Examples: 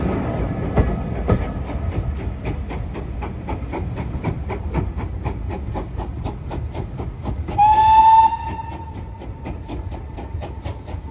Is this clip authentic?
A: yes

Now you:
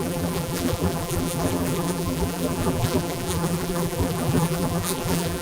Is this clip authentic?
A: no